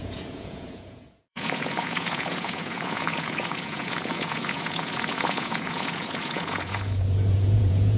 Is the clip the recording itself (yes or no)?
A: no